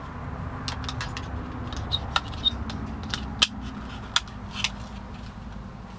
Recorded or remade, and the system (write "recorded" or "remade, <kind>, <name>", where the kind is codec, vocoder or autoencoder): recorded